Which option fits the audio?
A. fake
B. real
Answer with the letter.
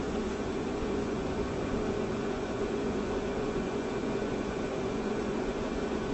A